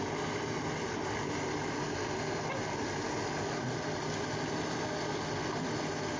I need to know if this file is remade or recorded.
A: recorded